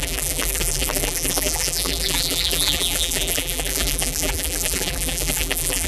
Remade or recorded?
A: remade